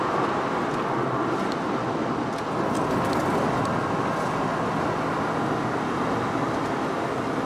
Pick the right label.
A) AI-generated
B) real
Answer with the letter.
A